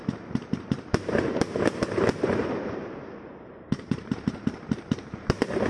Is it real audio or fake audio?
fake